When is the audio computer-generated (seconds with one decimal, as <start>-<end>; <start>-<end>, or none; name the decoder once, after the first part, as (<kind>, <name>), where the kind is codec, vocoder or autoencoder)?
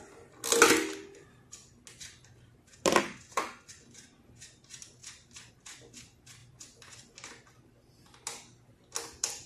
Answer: none